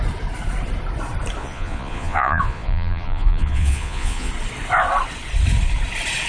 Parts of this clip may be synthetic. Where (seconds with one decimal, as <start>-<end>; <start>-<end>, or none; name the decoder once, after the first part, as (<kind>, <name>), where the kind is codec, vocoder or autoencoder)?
1.4-4.3 (vocoder, Vocos)